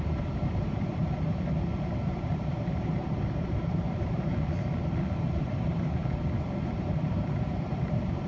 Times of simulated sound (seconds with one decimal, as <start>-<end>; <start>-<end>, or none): 0.0-1.0; 2.1-4.3; 5.2-6.0; 6.8-8.3